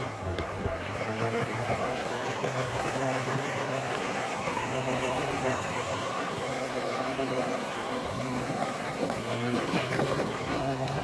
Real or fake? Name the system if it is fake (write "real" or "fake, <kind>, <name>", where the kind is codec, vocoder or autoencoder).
fake, codec, SNAC